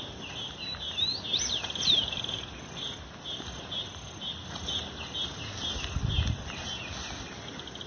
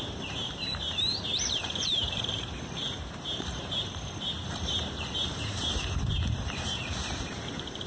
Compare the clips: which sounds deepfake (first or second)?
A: second